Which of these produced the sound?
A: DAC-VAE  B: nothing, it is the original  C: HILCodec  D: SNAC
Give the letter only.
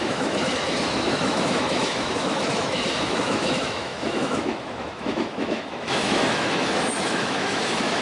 A